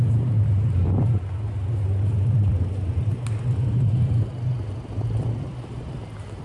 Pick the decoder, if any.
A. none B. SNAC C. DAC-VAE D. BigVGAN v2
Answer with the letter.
A